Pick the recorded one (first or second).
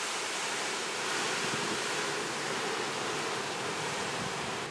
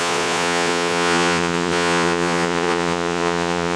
first